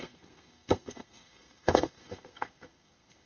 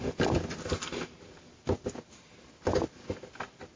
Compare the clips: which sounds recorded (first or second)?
second